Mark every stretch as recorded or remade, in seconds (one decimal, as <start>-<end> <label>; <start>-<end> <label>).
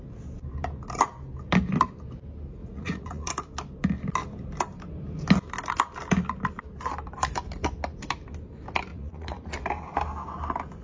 0.0-2.6 recorded; 2.6-3.3 remade; 3.3-8.9 recorded; 8.9-9.5 remade; 9.5-10.8 recorded